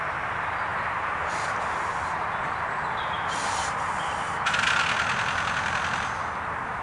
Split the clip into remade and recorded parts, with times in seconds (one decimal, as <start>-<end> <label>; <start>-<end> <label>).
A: 0.0-6.8 recorded